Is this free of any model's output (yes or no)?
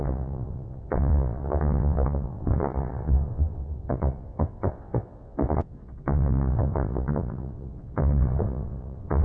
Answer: no